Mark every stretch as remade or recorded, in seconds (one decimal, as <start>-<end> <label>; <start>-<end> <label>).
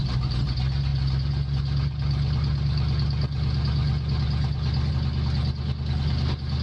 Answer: 0.0-6.6 recorded